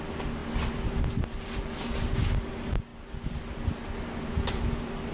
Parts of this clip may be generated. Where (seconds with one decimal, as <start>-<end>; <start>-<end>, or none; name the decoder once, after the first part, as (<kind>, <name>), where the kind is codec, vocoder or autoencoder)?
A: none

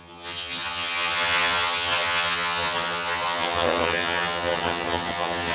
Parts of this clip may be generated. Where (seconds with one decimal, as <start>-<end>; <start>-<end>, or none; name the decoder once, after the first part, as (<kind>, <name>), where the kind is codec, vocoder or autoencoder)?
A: 0.0-5.5 (vocoder, HiFi-GAN)

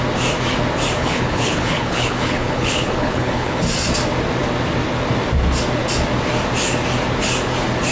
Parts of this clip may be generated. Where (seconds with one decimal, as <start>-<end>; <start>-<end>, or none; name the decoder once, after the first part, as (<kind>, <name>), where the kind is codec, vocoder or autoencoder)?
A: 1.0-3.6 (codec, HILCodec)

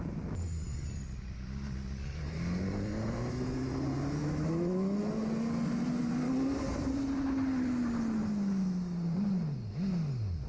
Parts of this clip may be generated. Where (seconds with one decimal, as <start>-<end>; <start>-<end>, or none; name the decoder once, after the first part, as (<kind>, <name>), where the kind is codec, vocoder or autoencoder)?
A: 4.2-5.1 (autoencoder, DAC-VAE)

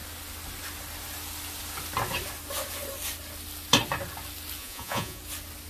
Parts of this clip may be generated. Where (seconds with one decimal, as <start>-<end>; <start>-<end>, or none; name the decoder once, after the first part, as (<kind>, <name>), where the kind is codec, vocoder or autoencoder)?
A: 4.6-5.2 (vocoder, Vocos)

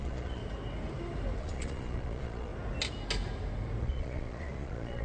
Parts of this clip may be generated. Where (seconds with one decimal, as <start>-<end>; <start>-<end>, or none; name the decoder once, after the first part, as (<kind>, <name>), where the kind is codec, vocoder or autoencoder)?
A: 0.0-0.4 (vocoder, Vocos); 1.4-2.5; 3.8-5.0